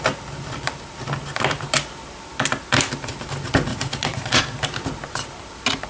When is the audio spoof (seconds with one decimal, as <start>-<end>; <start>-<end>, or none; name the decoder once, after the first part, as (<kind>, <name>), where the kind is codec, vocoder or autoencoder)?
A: 3.7-4.4 (vocoder, Vocos)

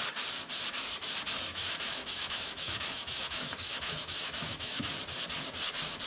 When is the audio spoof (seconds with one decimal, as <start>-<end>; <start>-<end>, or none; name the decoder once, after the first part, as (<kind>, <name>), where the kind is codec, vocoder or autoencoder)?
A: 1.5-4.9 (autoencoder, DAC-VAE)

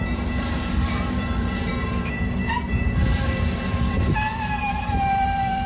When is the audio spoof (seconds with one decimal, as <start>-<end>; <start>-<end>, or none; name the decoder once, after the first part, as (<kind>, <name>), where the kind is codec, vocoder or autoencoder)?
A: 0.0-5.7 (vocoder, BigVGAN v2)

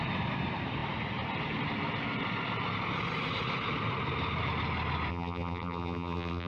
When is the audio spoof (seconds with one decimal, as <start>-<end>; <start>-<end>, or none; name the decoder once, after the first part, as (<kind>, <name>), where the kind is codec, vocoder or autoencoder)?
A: 5.1-6.5 (vocoder, BigVGAN v2)

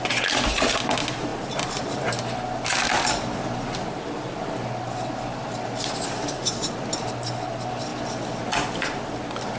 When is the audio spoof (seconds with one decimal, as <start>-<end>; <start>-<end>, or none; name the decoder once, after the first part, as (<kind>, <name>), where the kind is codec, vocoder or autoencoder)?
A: none

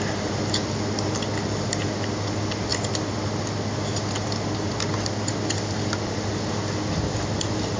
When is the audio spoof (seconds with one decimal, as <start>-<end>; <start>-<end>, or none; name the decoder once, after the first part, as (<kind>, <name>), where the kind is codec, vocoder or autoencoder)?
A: none

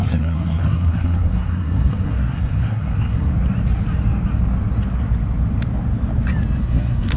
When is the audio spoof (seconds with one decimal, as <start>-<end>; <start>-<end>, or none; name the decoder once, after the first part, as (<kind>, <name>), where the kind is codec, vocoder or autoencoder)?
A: 0.0-3.3 (codec, SNAC); 6.6-7.2